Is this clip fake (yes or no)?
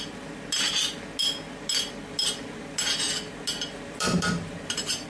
no